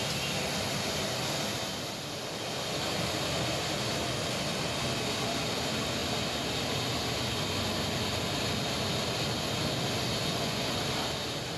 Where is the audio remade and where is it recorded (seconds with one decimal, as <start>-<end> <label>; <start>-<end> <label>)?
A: 0.0-10.2 recorded; 10.2-10.8 remade; 10.8-11.6 recorded